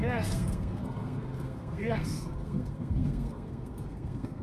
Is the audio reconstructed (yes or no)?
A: yes